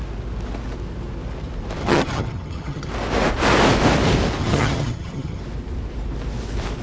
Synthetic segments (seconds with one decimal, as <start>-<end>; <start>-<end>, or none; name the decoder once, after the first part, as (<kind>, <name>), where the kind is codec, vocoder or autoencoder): 1.8-2.9 (vocoder, HiFi-GAN); 4.4-5.4